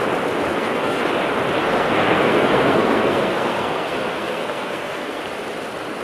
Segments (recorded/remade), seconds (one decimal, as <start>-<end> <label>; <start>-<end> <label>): 0.0-0.5 recorded; 0.5-1.0 remade; 1.0-1.6 recorded; 1.6-5.2 remade; 5.2-6.0 recorded